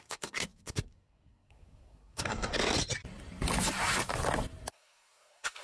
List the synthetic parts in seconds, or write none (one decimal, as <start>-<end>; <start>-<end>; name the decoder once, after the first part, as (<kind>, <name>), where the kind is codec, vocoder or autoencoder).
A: 0.0-2.5 (codec, SNAC); 4.7-5.6